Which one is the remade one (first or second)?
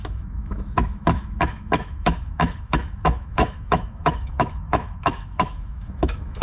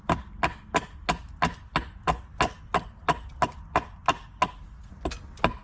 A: first